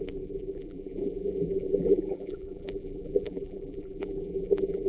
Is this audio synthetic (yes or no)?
yes